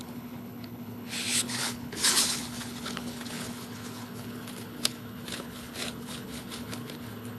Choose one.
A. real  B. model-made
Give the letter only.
B